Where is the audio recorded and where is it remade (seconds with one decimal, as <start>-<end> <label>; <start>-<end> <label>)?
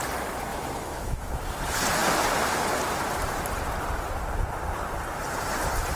0.0-0.5 recorded; 0.5-1.3 remade; 1.3-6.0 recorded